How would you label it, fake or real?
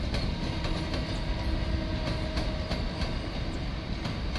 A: real